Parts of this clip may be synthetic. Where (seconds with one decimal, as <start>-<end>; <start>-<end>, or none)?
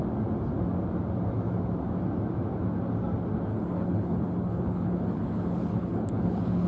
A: 3.5-6.7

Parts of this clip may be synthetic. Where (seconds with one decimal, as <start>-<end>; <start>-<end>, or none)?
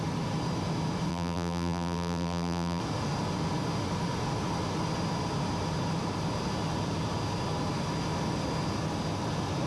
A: 1.1-2.8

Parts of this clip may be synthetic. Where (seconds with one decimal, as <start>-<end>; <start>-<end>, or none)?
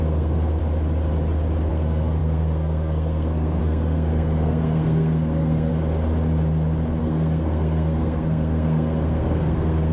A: 0.0-0.6; 1.7-5.7; 7.0-9.9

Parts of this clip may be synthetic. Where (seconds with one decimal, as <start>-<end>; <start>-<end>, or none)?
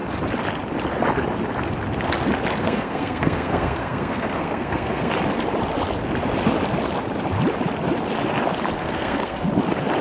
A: 2.6-5.1; 8.8-9.5